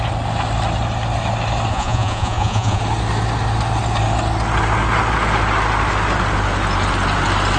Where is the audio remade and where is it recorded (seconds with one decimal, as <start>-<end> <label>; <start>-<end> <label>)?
0.0-1.7 recorded; 1.7-2.8 remade; 2.8-7.6 recorded